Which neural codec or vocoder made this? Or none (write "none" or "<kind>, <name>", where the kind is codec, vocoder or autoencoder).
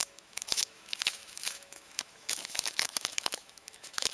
autoencoder, DAC-VAE